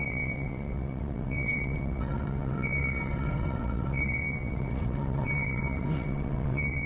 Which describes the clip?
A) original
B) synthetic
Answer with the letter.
B